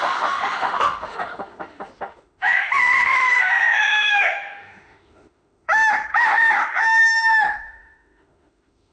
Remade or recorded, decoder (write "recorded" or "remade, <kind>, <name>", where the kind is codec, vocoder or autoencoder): remade, autoencoder, DAC-VAE